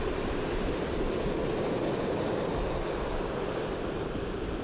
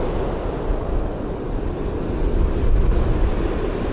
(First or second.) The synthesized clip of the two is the first